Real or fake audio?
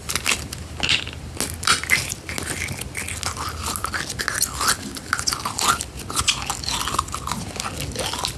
real